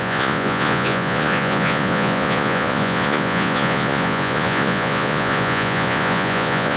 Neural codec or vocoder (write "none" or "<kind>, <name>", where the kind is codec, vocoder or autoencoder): vocoder, Vocos